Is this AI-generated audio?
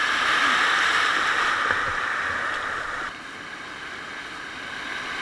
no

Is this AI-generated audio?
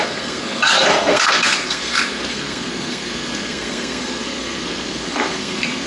yes